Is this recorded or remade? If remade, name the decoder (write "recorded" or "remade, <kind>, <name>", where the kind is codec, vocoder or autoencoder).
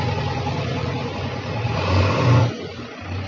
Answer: remade, vocoder, Vocos